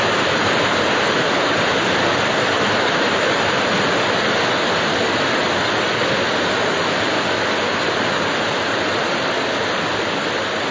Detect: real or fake real